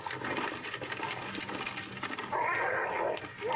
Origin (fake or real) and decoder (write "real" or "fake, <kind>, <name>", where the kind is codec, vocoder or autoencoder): real